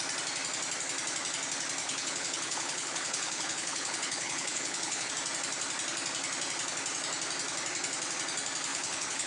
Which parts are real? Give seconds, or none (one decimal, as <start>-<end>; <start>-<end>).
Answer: 0.0-1.8; 5.1-8.7